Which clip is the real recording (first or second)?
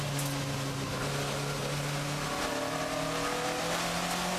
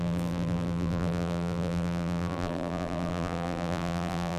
first